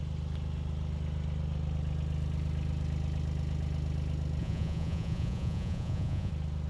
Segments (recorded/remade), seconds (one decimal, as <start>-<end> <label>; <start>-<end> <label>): 0.0-4.4 recorded; 4.4-6.3 remade; 6.3-6.7 recorded